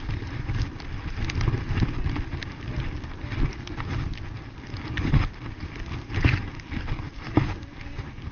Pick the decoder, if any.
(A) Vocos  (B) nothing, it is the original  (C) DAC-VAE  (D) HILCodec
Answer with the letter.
B